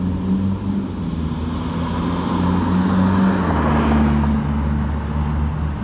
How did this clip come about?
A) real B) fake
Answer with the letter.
A